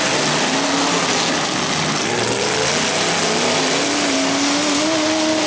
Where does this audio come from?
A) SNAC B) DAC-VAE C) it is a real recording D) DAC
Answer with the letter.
C